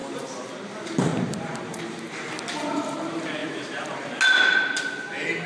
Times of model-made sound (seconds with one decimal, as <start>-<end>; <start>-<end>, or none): 1.1-1.8; 3.4-4.1